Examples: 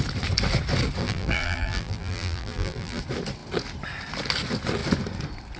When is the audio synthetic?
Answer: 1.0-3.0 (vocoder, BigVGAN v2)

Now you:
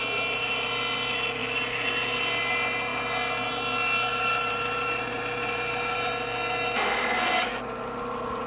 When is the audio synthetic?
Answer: 4.1-6.1 (vocoder, BigVGAN v2)

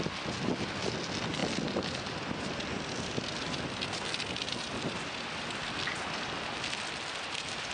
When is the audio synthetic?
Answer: none

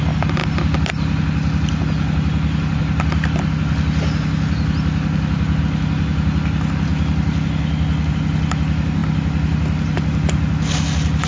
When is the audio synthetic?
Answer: none

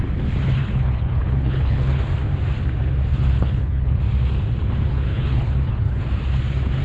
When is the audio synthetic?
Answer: 0.6-2.0 (codec, HILCodec); 3.1-4.0; 4.9-6.0

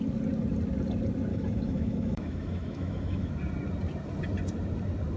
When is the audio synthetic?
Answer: 1.3-3.3 (autoencoder, DAC-VAE)

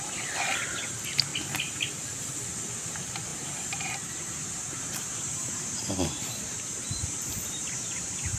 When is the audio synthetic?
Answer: 3.3-8.4 (vocoder, BigVGAN v2)